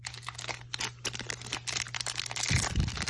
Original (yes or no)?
yes